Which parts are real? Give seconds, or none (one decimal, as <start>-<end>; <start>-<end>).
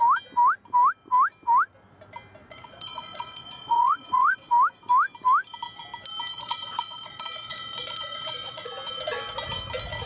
0.0-2.4; 4.5-6.3; 8.7-10.1